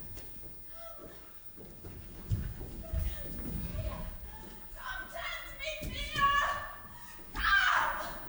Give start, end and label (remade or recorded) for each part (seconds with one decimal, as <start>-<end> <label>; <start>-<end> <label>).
0.0-1.0 recorded; 1.0-3.0 remade; 3.0-3.7 recorded; 3.7-7.4 remade; 7.4-8.3 recorded